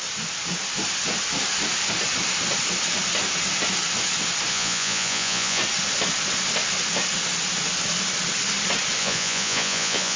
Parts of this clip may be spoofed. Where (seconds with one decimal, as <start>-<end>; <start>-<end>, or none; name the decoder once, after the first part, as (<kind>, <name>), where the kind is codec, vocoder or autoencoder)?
4.5-5.6 (vocoder, Vocos); 9.0-10.2